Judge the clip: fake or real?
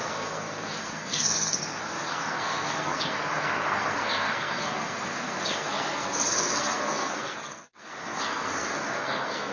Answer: fake